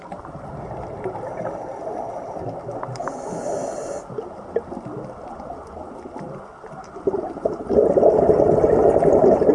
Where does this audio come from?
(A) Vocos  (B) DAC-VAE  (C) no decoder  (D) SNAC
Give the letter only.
C